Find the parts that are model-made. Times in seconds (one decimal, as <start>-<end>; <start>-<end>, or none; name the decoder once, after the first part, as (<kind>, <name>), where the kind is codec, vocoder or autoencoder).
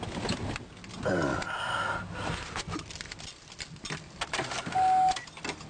none